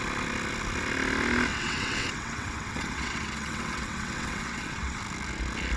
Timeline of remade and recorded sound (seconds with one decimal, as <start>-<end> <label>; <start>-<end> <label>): 0.0-1.5 recorded; 1.5-5.0 remade; 5.0-5.8 recorded

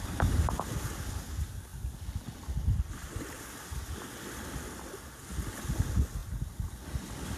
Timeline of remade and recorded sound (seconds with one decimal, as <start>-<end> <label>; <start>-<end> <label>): 0.0-7.4 recorded

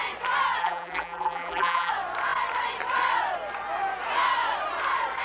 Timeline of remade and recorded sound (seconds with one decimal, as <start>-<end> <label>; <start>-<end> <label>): 0.0-0.6 recorded; 0.6-1.9 remade; 1.9-5.2 recorded

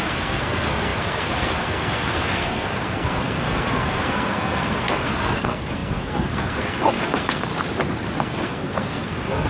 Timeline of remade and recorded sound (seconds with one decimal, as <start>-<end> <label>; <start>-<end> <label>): 0.0-7.5 remade; 7.5-8.2 recorded; 8.2-9.5 remade

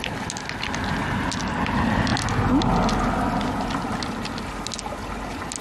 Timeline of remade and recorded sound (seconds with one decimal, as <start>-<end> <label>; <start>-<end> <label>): 0.0-5.6 recorded